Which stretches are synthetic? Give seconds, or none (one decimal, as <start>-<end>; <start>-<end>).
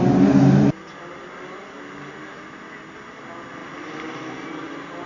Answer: none